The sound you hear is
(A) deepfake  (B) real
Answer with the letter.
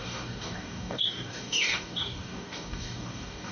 A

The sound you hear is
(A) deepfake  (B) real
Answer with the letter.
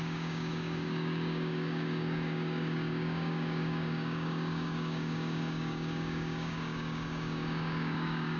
A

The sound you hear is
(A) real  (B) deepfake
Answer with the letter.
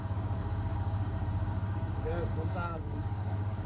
B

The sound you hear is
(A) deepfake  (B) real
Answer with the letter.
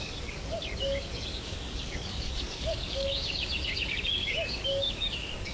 A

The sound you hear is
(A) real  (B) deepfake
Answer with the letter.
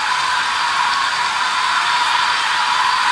A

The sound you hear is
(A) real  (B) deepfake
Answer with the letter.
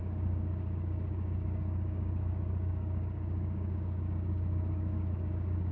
B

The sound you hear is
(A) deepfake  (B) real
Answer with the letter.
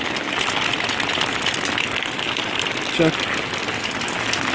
B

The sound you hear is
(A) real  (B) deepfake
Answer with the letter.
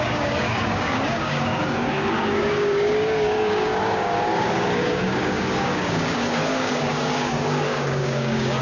B